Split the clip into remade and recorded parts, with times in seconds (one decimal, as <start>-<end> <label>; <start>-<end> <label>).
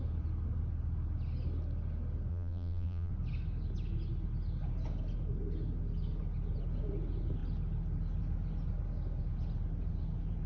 0.0-2.3 recorded; 2.3-3.1 remade; 3.1-10.5 recorded